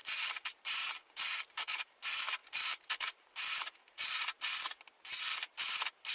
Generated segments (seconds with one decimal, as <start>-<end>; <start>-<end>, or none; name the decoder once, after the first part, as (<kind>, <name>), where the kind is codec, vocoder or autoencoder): 0.0-1.9 (vocoder, BigVGAN v2); 2.4-4.4